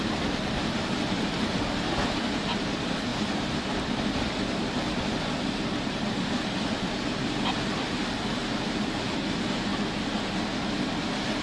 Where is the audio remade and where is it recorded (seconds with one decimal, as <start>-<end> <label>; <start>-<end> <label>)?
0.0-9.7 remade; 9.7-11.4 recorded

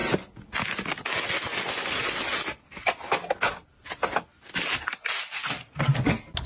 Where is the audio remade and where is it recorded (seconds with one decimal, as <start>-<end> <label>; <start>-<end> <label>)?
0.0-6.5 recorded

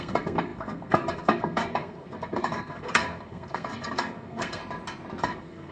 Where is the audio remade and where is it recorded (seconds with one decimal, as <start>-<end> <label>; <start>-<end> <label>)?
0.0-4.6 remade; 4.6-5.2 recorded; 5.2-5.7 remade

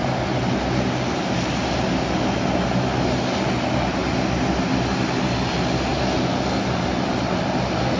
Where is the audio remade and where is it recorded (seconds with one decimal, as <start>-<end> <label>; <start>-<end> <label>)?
0.0-8.0 recorded

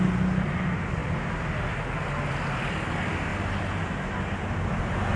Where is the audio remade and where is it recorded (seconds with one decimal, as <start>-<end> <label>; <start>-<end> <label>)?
0.0-5.2 recorded

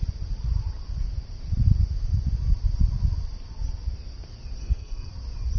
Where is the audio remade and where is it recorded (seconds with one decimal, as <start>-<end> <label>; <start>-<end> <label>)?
0.0-4.6 recorded; 4.6-5.1 remade; 5.1-5.6 recorded

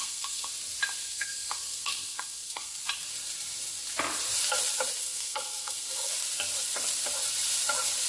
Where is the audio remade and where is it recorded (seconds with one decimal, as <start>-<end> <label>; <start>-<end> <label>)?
0.0-0.5 remade; 0.5-1.0 recorded; 1.0-2.8 remade; 2.8-5.0 recorded; 5.0-6.1 remade; 6.1-8.1 recorded